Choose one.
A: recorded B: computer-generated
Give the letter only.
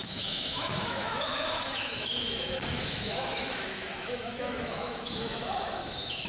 B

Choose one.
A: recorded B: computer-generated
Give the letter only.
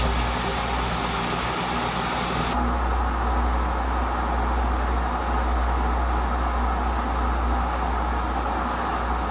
A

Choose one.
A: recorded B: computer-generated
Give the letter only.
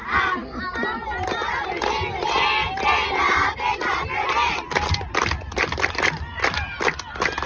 A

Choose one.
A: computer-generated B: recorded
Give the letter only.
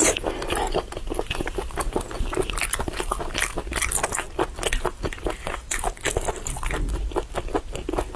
B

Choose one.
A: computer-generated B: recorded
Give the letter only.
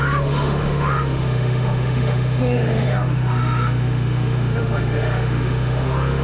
A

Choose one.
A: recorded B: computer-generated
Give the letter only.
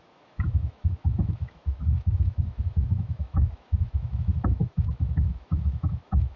B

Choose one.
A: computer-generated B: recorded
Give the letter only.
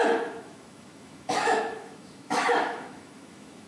A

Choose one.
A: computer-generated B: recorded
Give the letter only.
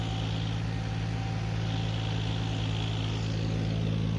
B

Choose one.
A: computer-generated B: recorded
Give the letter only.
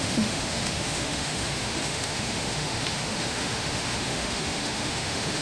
A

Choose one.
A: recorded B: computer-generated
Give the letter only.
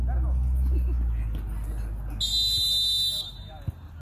A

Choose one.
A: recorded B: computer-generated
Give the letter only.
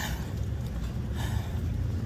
A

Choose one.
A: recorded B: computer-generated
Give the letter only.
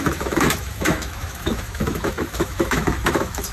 B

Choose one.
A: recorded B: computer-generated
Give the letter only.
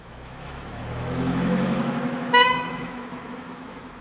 B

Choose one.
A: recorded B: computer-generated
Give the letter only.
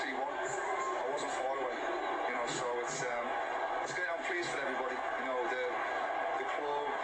A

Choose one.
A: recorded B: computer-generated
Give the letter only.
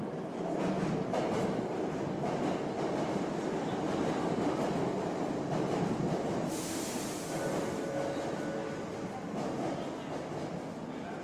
A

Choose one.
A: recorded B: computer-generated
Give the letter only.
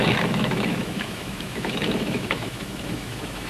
B